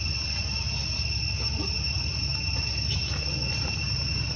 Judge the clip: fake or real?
real